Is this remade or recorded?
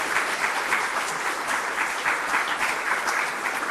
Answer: recorded